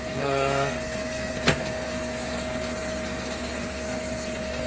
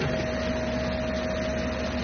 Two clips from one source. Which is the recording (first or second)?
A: second